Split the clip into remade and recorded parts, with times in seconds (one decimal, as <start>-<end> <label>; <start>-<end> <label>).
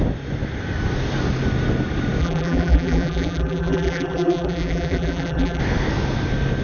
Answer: 0.0-2.2 recorded; 2.2-5.6 remade; 5.6-6.6 recorded